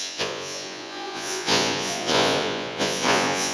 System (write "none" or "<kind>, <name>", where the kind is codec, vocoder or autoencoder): vocoder, Vocos